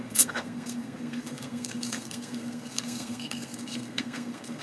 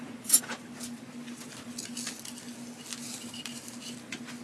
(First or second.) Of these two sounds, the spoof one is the first